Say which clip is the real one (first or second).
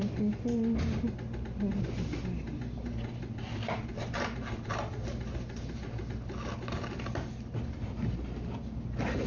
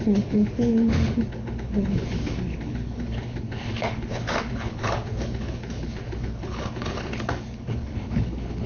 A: first